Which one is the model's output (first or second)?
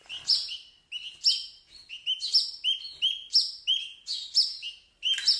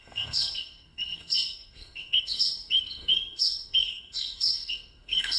second